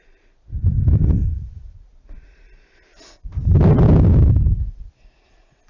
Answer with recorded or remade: remade